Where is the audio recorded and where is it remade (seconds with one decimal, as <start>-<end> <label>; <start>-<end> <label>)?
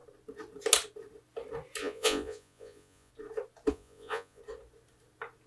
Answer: 0.0-1.8 recorded; 1.8-3.1 remade; 3.1-3.7 recorded; 3.7-4.4 remade; 4.4-5.5 recorded